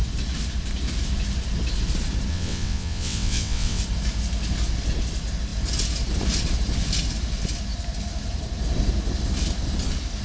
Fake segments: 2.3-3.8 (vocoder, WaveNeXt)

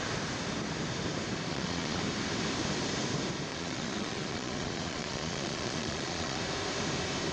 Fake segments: 1.5-2.0 (vocoder, Vocos); 3.5-6.4

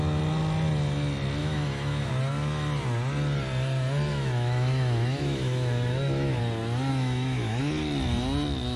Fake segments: 1.4-2.1 (autoencoder, DAC-VAE); 4.1-6.4; 6.9-7.6

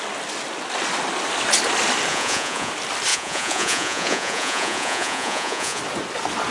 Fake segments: 2.1-2.7 (vocoder, Vocos); 3.1-5.8

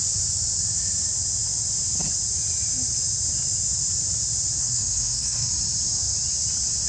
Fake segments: 4.6-5.5 (codec, SNAC)